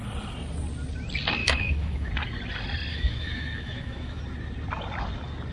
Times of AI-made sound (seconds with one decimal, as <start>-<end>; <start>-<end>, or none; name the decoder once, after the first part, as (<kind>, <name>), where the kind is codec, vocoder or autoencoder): 1.4-2.1 (autoencoder, DAC-VAE); 2.9-4.2

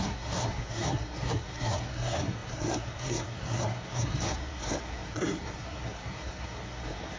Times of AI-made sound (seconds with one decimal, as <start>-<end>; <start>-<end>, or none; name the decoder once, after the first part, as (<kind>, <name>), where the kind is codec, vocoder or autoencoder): 0.0-7.2 (codec, SNAC)

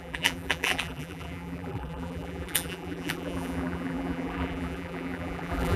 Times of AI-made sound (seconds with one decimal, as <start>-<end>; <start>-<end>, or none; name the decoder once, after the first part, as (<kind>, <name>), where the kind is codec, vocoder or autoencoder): 0.0-5.8 (vocoder, BigVGAN v2)

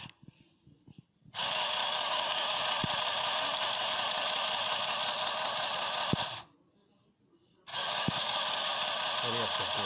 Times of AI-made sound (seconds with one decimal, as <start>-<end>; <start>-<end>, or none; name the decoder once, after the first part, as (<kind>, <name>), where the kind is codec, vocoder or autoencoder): 1.8-2.6 (codec, DAC); 7.7-8.7

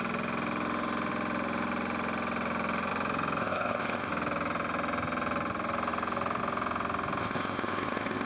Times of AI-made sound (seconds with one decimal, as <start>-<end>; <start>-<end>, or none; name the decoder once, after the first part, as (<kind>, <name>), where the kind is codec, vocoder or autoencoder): 3.4-4.1 (codec, ZipCodec); 7.2-8.3

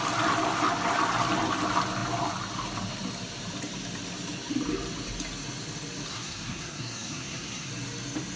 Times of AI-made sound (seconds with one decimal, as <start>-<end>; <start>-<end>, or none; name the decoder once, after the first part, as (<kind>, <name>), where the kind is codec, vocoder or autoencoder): 6.1-7.7 (codec, SNAC)

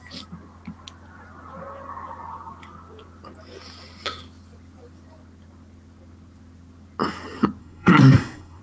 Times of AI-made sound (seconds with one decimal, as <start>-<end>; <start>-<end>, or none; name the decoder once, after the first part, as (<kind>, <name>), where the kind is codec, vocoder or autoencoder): 7.6-8.6 (codec, SNAC)

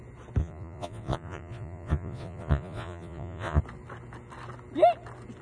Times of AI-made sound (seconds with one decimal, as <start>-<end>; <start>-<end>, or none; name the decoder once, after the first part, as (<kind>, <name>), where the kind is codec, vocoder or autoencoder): 0.4-3.6 (vocoder, Vocos)